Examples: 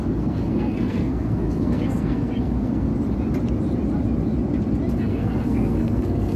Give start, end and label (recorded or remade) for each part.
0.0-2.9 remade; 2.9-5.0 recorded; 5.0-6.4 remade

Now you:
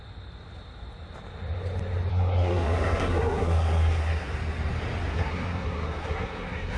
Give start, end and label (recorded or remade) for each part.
0.0-2.1 recorded; 2.1-4.3 remade; 4.3-5.1 recorded; 5.1-6.8 remade